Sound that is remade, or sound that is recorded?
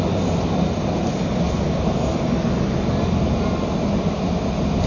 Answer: recorded